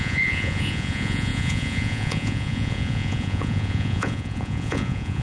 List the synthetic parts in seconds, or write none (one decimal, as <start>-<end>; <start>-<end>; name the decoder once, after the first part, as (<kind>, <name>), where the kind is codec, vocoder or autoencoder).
0.0-5.2 (vocoder, Vocos)